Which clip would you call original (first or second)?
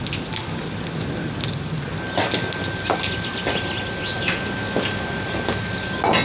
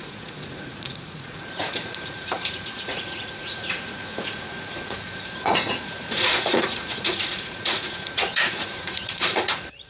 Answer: first